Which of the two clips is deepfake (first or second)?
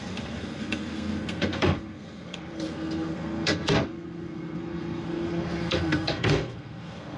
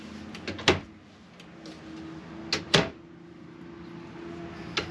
first